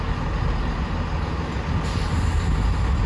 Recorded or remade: recorded